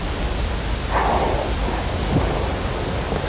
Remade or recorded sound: recorded